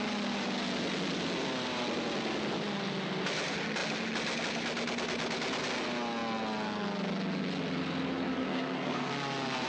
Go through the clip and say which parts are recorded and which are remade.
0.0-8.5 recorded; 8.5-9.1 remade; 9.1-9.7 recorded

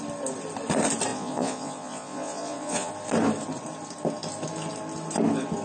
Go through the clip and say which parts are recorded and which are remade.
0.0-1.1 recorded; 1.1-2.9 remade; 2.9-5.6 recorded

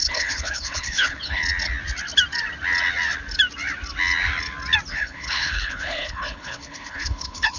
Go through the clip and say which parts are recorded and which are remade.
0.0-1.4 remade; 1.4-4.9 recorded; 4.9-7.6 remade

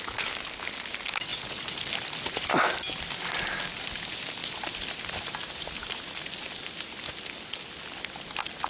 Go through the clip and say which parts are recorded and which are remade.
0.0-1.3 recorded; 1.3-2.5 remade; 2.5-4.4 recorded; 4.4-7.1 remade; 7.1-8.7 recorded

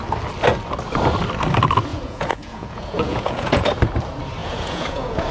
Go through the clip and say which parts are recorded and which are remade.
0.0-1.9 recorded; 1.9-3.7 remade; 3.7-4.4 recorded; 4.4-5.3 remade

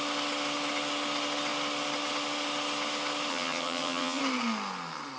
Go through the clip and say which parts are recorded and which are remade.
0.0-3.3 recorded; 3.3-4.2 remade; 4.2-5.2 recorded